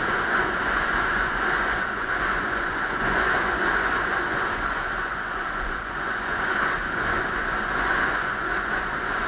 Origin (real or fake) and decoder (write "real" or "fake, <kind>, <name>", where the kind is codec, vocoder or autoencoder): fake, vocoder, Vocos